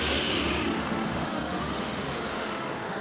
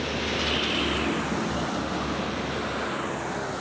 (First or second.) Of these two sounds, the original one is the second